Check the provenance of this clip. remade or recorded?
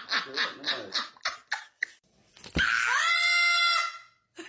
recorded